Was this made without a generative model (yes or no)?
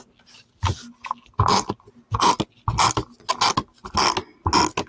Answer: yes